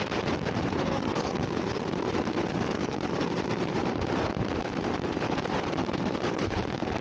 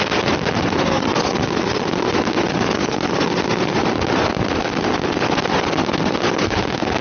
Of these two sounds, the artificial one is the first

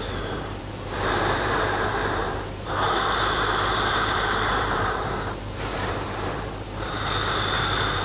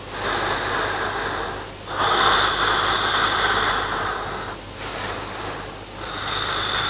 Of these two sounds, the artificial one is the first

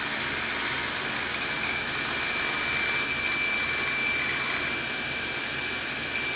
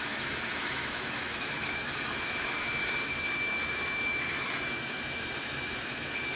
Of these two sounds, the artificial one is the second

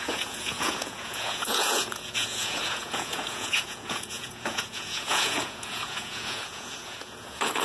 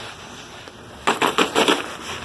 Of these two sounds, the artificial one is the first